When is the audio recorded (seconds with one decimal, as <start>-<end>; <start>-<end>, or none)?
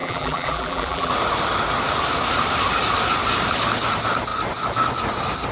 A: 1.1-5.5